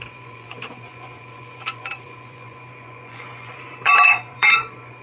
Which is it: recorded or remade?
remade